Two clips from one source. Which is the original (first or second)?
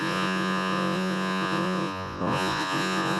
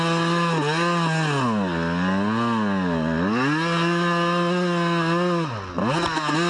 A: second